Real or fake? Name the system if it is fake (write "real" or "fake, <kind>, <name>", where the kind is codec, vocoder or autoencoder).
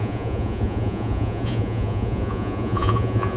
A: fake, vocoder, Vocos